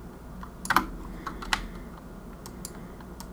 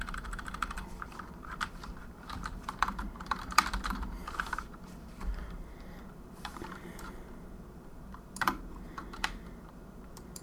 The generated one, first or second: second